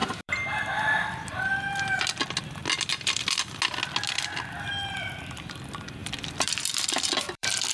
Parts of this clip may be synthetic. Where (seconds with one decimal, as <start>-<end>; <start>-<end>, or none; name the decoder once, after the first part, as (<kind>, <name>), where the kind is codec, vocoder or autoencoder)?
0.0-1.4 (vocoder, BigVGAN v2); 6.0-7.7